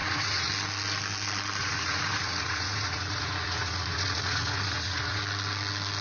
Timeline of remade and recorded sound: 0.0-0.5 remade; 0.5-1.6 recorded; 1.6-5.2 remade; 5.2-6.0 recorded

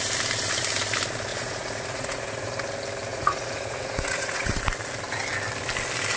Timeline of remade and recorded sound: 0.0-1.3 recorded; 1.3-2.6 remade; 2.6-3.1 recorded; 3.1-4.6 remade; 4.6-6.2 recorded

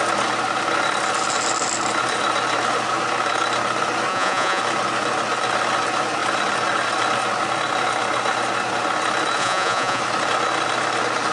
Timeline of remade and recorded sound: 0.0-4.1 recorded; 4.1-4.6 remade; 4.6-9.4 recorded; 9.4-10.0 remade; 10.0-11.3 recorded

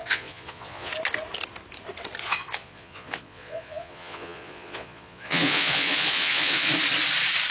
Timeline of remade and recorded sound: 0.0-0.9 remade; 0.9-2.2 recorded; 2.2-6.7 remade; 6.7-7.5 recorded

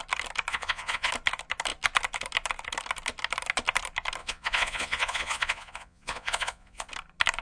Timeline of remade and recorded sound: 0.0-0.5 recorded; 0.5-1.1 remade; 1.1-4.2 recorded; 4.2-6.9 remade; 6.9-7.4 recorded